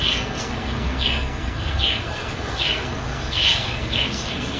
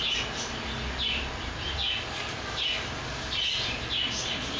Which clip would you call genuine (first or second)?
second